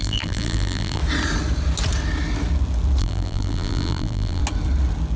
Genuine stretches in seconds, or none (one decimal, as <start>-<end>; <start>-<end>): 1.0-3.0; 4.4-5.2